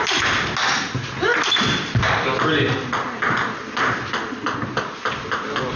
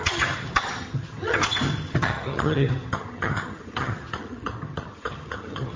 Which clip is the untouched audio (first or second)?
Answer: first